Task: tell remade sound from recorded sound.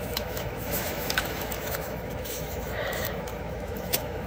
remade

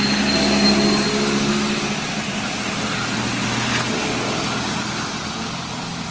recorded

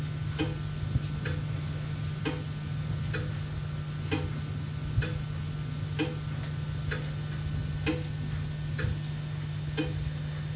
recorded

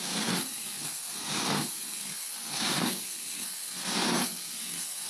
remade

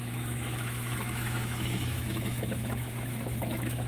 remade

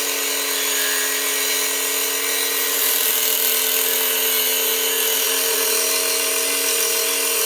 recorded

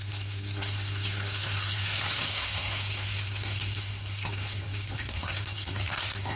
remade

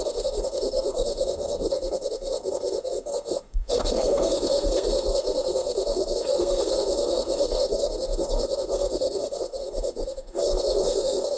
remade